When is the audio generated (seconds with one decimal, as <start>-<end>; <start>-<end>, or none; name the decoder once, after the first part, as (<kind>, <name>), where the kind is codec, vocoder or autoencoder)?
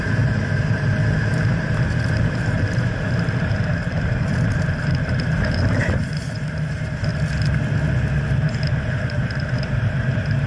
0.0-7.1 (vocoder, BigVGAN v2); 9.1-10.5